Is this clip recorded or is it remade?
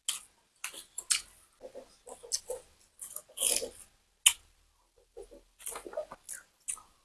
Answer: recorded